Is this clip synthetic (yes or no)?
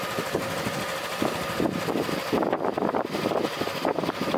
no